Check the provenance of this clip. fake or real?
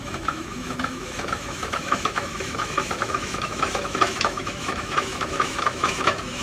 fake